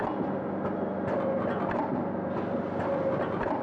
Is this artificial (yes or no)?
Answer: no